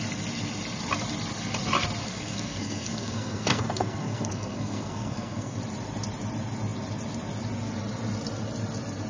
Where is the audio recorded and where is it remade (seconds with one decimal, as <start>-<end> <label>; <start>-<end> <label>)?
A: 0.0-2.0 recorded; 2.0-5.6 remade; 5.6-9.1 recorded